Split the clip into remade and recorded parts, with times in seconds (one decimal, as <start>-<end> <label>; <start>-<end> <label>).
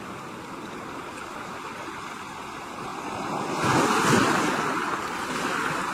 0.0-5.9 recorded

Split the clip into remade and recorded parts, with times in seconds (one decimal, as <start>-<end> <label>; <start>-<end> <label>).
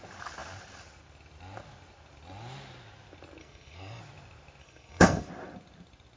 0.0-3.4 recorded; 3.4-4.0 remade; 4.0-4.6 recorded; 4.6-5.3 remade; 5.3-6.2 recorded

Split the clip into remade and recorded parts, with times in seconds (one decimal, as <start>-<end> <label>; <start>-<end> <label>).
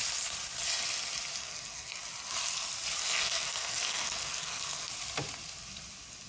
0.0-1.4 recorded; 1.4-2.0 remade; 2.0-3.0 recorded; 3.0-4.9 remade; 4.9-6.3 recorded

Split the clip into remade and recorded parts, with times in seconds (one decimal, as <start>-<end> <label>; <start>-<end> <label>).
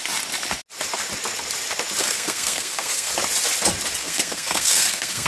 0.0-2.0 recorded; 2.0-3.1 remade; 3.1-4.0 recorded; 4.0-5.3 remade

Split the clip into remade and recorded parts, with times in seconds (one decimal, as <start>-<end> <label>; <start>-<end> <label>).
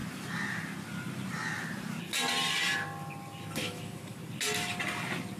0.0-3.6 recorded; 3.6-4.2 remade; 4.2-5.4 recorded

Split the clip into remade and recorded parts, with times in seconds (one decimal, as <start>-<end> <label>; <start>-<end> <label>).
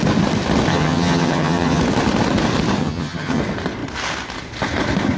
0.0-0.7 recorded; 0.7-1.8 remade; 1.8-2.8 recorded; 2.8-3.4 remade; 3.4-5.2 recorded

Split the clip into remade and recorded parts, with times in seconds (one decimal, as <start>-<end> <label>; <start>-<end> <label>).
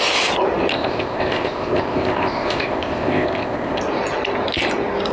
0.0-0.7 recorded; 0.7-3.8 remade; 3.8-5.1 recorded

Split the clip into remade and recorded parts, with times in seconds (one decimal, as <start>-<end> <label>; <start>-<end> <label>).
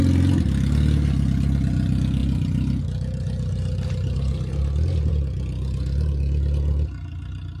0.0-7.6 recorded